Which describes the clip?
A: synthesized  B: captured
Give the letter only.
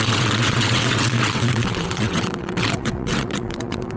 A